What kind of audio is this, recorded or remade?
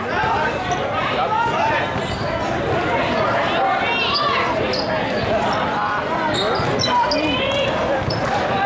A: recorded